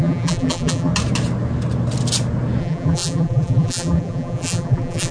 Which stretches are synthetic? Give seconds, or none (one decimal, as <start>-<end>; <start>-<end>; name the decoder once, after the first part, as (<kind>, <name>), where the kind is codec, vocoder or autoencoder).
0.0-0.9 (vocoder, BigVGAN v2); 2.6-5.1